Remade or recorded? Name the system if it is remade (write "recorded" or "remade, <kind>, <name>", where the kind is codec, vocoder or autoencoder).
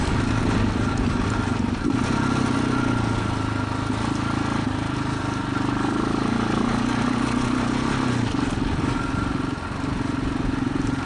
recorded